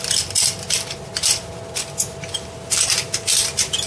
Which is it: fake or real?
real